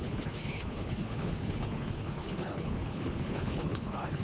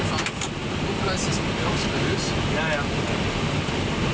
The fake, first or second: first